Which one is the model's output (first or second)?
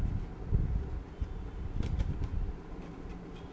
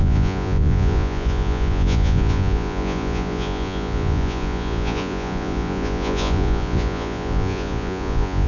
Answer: second